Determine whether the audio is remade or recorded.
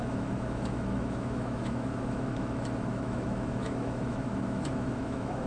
remade